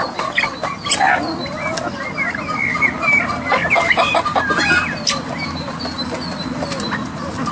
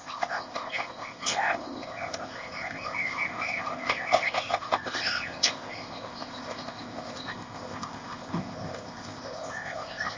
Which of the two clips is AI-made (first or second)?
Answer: second